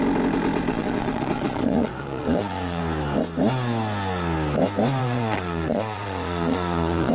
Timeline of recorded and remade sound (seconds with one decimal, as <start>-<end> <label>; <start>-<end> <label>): 0.0-0.7 recorded; 0.7-2.8 remade; 2.8-5.0 recorded; 5.0-7.1 remade